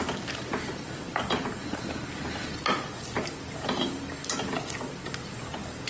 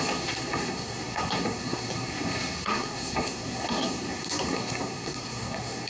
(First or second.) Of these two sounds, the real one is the first